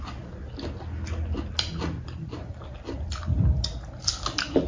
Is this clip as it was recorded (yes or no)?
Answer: yes